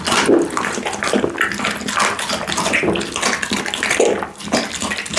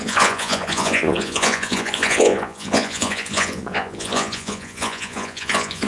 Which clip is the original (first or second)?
first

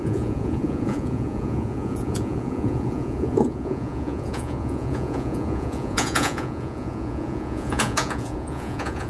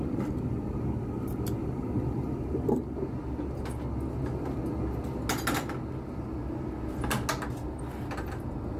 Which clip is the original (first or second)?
second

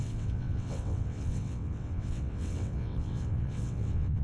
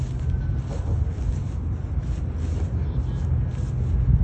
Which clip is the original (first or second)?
second